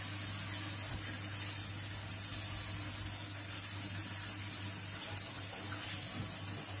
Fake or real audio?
real